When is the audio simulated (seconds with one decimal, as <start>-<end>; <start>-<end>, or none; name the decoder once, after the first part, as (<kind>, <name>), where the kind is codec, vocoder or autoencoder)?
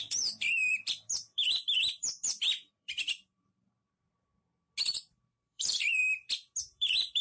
0.0-4.3 (vocoder, BigVGAN v2); 5.3-6.0; 6.6-7.2